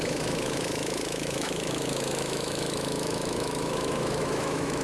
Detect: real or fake fake